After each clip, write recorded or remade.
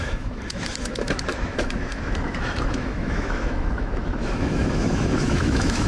remade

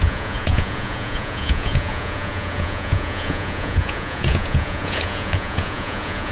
remade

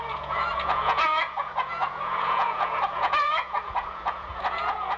remade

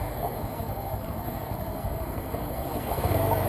remade